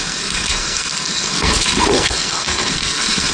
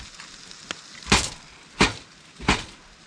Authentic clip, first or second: second